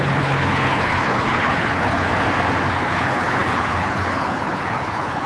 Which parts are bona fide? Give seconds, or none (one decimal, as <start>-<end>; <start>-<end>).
2.1-2.7